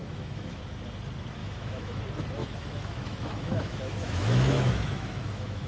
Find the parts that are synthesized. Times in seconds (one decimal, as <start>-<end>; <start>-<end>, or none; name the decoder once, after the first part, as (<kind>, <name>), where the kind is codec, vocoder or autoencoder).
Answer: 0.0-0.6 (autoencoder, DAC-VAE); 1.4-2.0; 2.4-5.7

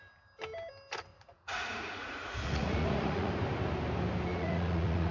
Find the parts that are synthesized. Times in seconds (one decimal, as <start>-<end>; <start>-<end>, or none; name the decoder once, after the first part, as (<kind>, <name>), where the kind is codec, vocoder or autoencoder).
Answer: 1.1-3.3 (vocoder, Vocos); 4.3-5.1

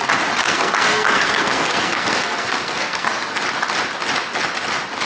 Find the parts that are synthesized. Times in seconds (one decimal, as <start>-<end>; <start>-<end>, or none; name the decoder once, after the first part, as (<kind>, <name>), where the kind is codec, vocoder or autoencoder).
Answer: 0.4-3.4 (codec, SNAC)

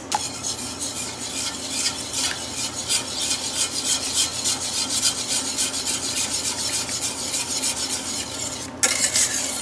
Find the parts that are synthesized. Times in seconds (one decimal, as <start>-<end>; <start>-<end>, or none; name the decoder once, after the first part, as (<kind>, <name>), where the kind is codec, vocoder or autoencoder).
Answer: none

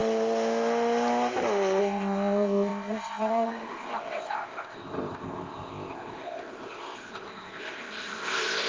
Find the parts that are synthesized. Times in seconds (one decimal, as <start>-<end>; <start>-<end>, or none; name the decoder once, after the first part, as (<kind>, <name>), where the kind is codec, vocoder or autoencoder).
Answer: 1.8-8.7 (codec, ZipCodec)

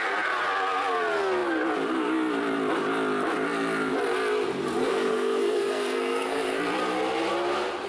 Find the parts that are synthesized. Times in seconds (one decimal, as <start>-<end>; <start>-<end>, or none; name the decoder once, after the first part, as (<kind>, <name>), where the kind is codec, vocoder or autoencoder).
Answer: 4.8-6.6 (codec, SNAC)